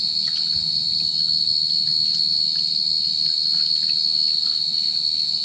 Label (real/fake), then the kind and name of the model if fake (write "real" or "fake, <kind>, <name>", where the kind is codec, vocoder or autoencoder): real